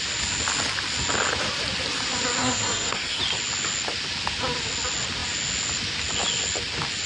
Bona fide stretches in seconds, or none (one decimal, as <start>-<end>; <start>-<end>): 0.0-2.4; 3.2-7.1